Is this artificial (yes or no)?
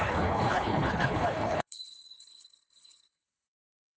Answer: yes